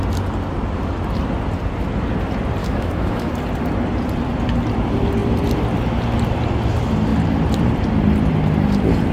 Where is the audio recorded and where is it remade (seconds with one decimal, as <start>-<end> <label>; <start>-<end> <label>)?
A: 0.0-2.6 recorded; 2.6-3.3 remade; 3.3-9.1 recorded